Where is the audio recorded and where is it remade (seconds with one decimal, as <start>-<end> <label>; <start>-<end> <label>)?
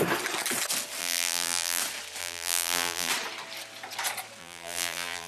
0.0-1.0 recorded; 1.0-1.8 remade; 1.8-2.2 recorded; 2.2-3.1 remade; 3.1-4.4 recorded; 4.4-5.3 remade